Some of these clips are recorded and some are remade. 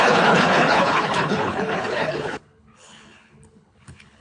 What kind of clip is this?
remade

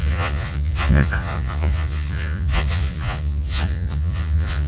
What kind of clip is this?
remade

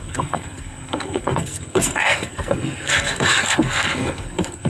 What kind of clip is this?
remade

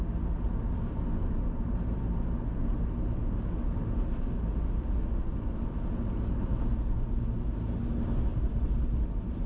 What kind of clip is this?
recorded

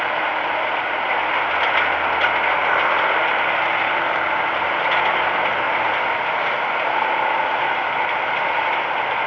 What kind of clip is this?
recorded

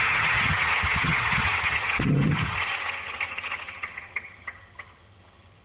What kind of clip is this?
remade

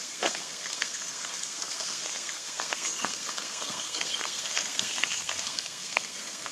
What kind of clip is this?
remade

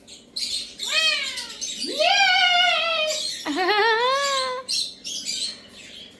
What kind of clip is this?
recorded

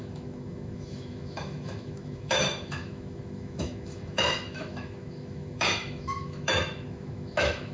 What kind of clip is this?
remade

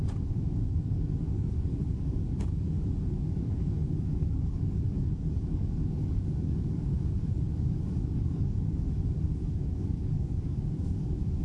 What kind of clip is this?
remade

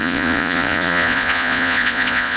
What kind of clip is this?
remade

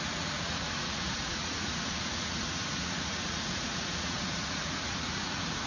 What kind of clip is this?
remade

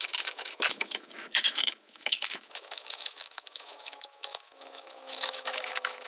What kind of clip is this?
remade